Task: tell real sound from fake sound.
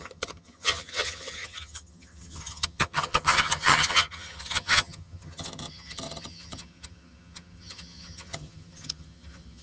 fake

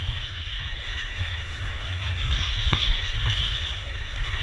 fake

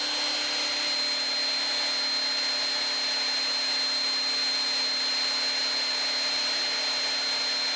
real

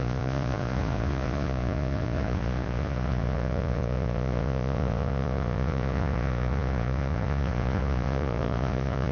fake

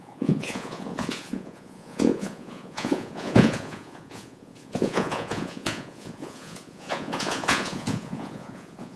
fake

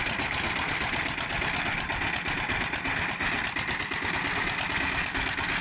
real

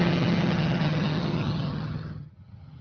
fake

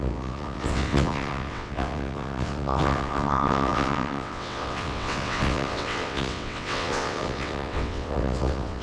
fake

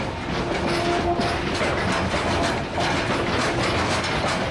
real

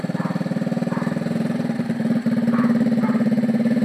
fake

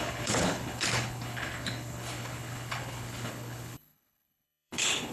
fake